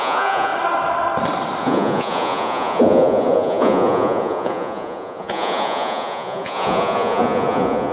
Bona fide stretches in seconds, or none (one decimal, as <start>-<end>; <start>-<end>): 0.5-1.6